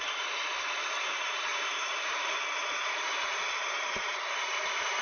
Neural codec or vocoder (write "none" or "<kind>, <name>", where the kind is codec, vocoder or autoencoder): vocoder, BigVGAN v2